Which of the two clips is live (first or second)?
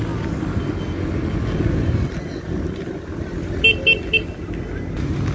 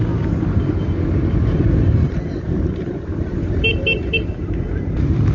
first